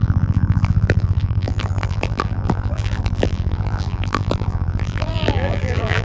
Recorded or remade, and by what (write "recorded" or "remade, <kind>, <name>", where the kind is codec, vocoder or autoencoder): remade, vocoder, BigVGAN v2